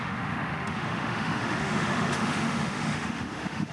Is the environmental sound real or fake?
fake